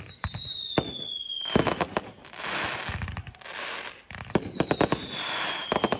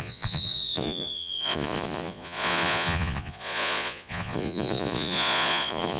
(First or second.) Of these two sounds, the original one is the first